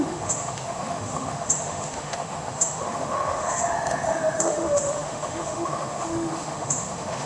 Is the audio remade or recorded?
remade